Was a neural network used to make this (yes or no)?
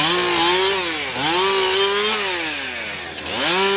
no